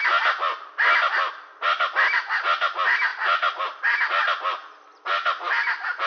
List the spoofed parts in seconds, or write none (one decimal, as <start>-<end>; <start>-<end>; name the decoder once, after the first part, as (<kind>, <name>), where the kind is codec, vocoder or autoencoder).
none